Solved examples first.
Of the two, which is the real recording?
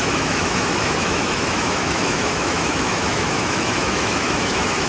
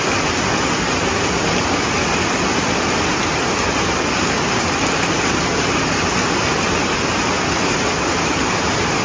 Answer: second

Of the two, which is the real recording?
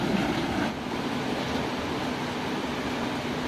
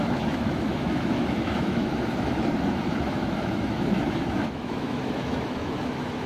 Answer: first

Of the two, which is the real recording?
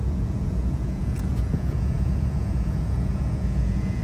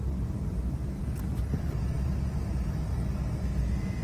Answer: second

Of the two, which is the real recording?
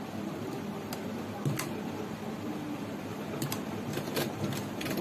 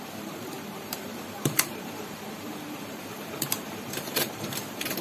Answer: first